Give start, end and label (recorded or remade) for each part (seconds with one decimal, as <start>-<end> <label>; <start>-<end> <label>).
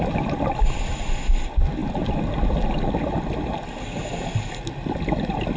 0.0-5.6 recorded